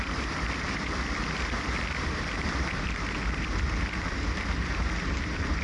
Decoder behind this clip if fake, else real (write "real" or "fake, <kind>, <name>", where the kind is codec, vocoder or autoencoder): fake, vocoder, BigVGAN v2